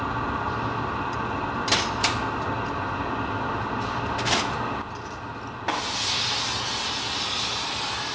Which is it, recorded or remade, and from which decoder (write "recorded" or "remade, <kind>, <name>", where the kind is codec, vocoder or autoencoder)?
recorded